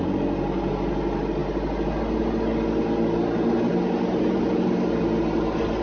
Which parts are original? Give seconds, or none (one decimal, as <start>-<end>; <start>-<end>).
0.0-5.8